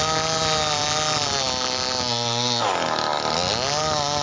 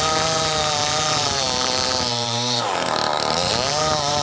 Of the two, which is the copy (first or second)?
second